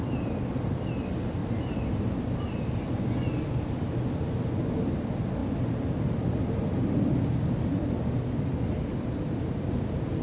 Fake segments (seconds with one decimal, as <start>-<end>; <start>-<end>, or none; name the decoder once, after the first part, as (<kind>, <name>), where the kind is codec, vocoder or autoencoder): 1.4-3.1 (vocoder, BigVGAN v2)